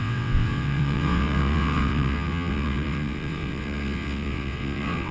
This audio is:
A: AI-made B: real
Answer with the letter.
A